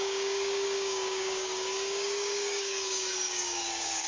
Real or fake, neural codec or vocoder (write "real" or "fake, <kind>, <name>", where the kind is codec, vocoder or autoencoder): fake, codec, DAC